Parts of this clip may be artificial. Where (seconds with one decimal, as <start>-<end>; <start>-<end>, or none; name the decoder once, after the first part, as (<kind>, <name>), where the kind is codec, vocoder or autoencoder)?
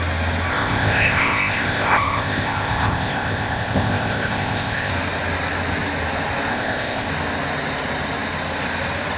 0.5-4.9 (codec, ZipCodec); 6.5-7.1